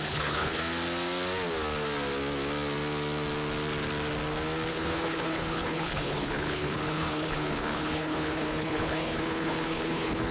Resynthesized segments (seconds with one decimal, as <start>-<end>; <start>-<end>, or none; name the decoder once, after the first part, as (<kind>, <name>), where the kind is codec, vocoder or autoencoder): 0.0-0.6 (codec, HILCodec); 4.7-10.3